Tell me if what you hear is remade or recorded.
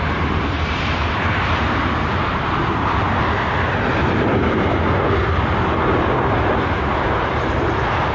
recorded